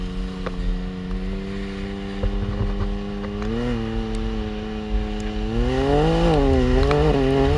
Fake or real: real